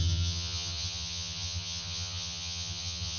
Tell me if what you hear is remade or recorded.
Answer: remade